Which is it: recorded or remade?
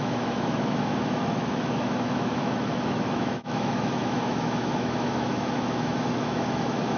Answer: remade